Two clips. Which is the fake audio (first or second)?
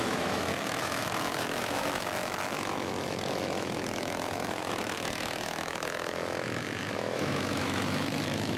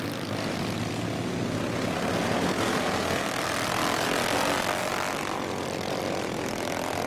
first